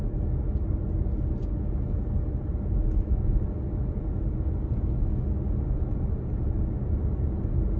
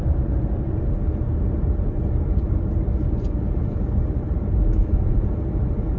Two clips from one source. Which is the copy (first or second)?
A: second